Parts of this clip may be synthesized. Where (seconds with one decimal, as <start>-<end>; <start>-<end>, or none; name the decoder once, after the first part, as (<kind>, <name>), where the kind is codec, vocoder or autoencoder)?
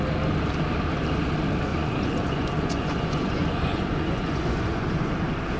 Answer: 1.7-5.1 (vocoder, Vocos)